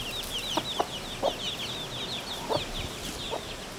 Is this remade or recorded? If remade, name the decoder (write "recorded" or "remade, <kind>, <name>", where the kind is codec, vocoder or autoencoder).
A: recorded